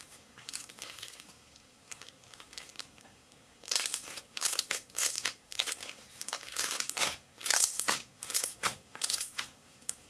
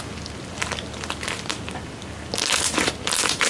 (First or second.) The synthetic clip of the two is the first